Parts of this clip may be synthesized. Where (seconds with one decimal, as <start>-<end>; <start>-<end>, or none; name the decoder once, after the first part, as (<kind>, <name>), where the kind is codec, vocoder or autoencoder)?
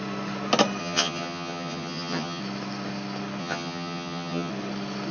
0.8-2.4 (vocoder, HiFi-GAN); 3.4-4.5